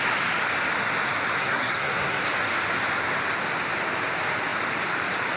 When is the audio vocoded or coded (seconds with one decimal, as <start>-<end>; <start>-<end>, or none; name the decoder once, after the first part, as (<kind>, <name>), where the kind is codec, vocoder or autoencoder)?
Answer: 1.4-2.2 (codec, SNAC)